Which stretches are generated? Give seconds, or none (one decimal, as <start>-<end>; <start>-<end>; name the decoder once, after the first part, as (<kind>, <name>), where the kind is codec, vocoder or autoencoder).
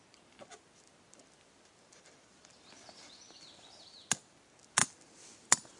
4.8-5.8 (vocoder, BigVGAN v2)